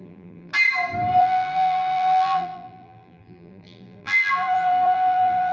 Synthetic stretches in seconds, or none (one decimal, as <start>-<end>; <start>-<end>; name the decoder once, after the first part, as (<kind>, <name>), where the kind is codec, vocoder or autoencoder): 0.0-0.5 (vocoder, BigVGAN v2); 1.2-5.5